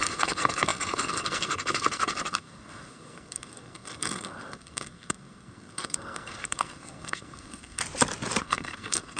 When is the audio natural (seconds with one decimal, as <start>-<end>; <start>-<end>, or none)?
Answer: 7.8-8.4